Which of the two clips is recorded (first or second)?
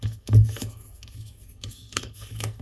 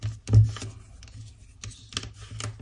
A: second